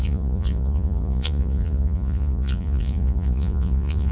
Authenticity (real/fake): fake